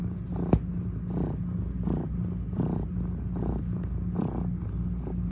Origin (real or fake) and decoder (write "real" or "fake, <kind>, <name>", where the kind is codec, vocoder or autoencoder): real